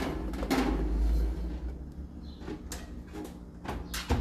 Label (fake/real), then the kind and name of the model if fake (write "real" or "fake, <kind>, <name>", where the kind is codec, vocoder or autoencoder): real